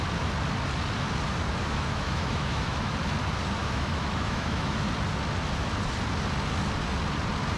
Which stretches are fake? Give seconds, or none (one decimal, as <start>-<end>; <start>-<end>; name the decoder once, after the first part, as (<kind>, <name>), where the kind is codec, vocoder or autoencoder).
1.6-2.9 (autoencoder, DAC-VAE); 3.6-4.9